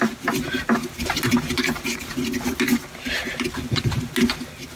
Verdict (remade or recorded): recorded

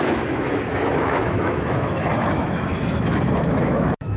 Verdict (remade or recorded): remade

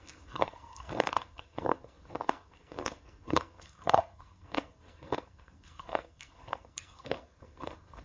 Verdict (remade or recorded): remade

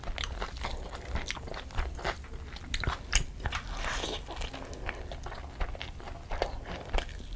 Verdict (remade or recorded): recorded